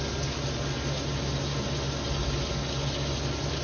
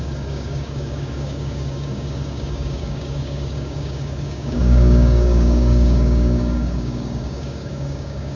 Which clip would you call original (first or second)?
first